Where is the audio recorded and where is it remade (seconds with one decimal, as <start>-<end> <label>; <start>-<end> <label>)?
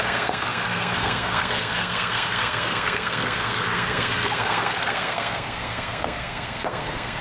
0.0-7.2 remade